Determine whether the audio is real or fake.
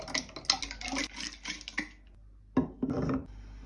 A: real